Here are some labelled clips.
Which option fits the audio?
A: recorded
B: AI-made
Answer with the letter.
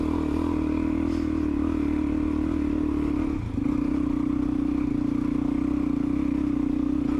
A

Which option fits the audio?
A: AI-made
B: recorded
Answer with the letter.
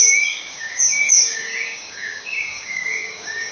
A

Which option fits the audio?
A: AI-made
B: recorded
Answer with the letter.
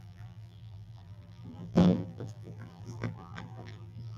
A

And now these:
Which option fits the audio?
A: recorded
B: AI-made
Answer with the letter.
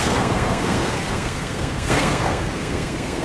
B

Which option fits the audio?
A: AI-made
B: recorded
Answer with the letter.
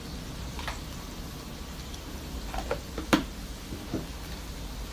B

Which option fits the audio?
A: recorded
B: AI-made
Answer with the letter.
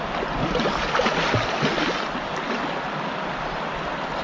A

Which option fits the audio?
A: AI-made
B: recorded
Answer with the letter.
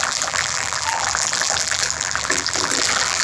A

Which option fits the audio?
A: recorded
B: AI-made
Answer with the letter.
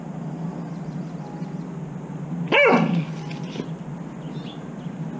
A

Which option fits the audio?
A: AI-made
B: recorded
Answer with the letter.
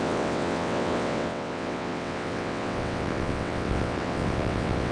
A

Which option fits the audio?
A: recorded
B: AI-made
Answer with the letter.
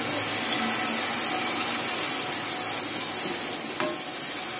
A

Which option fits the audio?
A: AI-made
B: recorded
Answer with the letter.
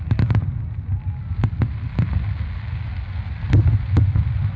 B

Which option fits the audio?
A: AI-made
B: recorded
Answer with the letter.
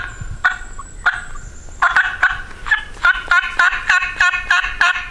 B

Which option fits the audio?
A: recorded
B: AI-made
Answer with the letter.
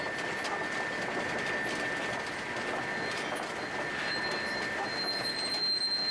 A